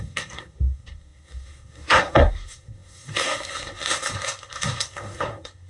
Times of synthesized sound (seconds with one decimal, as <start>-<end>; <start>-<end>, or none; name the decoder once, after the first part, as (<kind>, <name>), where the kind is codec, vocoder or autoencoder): 0.0-5.7 (codec, SNAC)

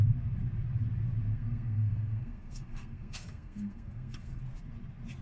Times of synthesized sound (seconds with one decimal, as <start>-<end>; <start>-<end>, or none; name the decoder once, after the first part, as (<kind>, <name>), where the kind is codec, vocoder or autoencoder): 1.3-4.4 (codec, SNAC)

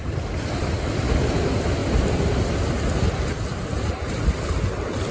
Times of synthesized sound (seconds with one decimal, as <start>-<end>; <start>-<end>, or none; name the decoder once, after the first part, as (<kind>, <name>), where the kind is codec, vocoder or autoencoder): none

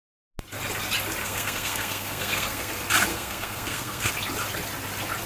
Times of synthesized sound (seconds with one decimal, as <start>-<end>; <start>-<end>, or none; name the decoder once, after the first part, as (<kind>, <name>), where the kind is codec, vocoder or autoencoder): 1.2-2.7 (codec, SNAC); 3.1-4.1

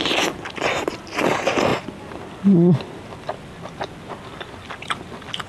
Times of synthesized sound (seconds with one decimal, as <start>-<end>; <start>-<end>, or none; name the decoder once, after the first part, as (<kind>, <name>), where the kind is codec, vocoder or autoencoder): none

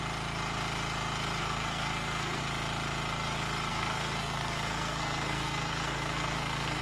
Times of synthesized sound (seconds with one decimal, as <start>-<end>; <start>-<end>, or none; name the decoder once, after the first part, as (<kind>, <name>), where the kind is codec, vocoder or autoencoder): 1.4-2.4 (codec, SNAC); 3.7-6.8

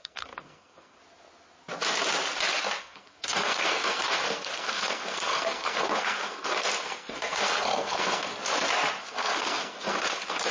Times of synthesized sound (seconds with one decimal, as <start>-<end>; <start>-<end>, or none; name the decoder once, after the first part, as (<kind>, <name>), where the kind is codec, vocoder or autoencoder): 0.0-1.0 (codec, SNAC); 2.8-8.3; 9.0-10.5

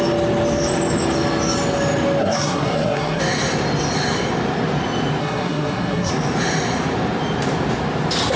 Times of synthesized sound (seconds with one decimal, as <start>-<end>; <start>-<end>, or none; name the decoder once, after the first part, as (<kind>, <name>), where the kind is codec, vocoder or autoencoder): 2.2-3.2 (codec, SNAC); 5.2-6.1